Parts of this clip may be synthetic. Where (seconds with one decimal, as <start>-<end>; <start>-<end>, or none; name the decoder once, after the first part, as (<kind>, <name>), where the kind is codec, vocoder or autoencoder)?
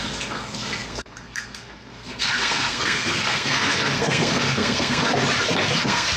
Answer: 0.0-5.0 (codec, SNAC); 5.8-6.2